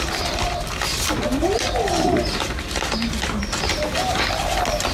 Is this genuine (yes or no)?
yes